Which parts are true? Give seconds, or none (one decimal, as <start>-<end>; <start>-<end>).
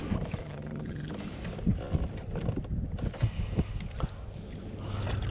0.0-0.4; 1.1-5.3